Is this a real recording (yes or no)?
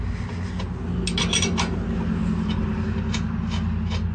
yes